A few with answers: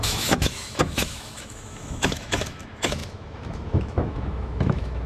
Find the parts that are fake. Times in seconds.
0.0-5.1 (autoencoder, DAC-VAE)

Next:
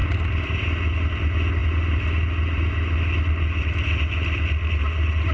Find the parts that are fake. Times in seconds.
none

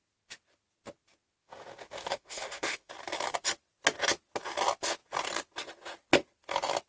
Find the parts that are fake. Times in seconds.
1.4-2.9 (autoencoder, DAC-VAE)

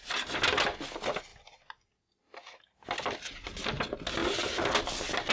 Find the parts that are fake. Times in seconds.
none

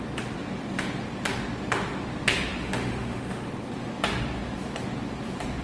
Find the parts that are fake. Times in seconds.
2.6-3.5 (autoencoder, DAC-VAE)

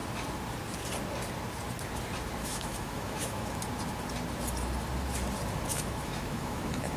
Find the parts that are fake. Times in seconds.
2.4-3.6 (autoencoder, DAC-VAE); 5.7-7.0